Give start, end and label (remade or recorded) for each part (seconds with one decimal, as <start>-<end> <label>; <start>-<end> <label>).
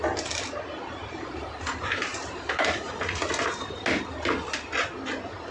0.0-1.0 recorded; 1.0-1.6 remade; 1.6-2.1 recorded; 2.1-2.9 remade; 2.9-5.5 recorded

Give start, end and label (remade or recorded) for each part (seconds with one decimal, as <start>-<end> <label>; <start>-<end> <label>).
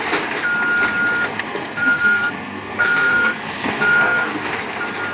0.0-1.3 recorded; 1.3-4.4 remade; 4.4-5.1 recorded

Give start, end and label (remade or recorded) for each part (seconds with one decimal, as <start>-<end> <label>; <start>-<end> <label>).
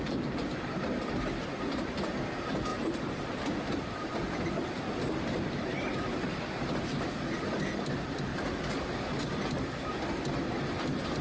0.0-2.7 recorded; 2.7-4.1 remade; 4.1-11.2 recorded